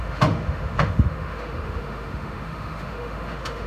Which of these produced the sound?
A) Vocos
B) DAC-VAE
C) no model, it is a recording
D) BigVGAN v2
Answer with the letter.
B